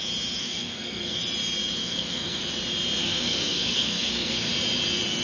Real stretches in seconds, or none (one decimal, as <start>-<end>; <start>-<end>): 0.0-0.4; 1.2-1.8; 2.4-3.0; 4.5-5.2